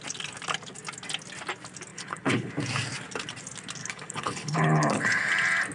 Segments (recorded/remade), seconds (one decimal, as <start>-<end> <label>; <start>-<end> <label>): 0.0-1.9 recorded; 1.9-2.5 remade; 2.5-3.8 recorded; 3.8-5.3 remade; 5.3-5.7 recorded